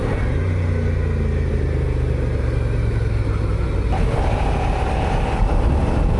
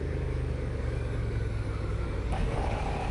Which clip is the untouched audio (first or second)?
first